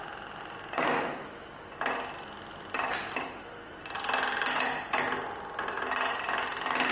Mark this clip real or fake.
real